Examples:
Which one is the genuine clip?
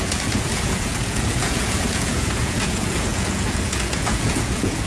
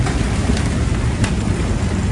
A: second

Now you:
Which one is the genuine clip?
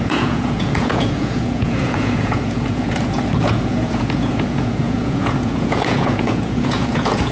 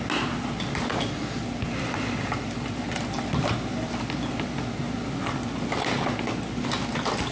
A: second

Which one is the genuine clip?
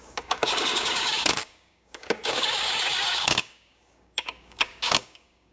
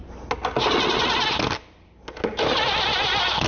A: second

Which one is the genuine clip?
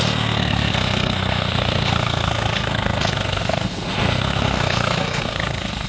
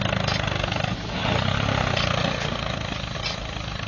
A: second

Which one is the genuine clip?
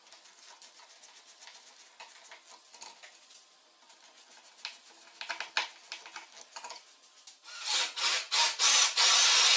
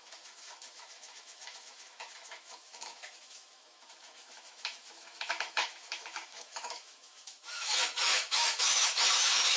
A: first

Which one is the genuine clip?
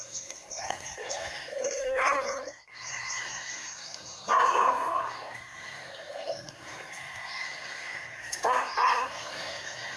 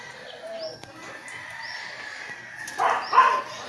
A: second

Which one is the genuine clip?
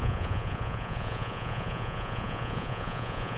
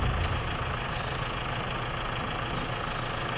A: second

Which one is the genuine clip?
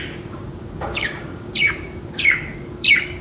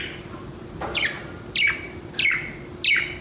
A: second